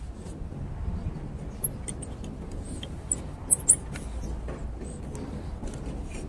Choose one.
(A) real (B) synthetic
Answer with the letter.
A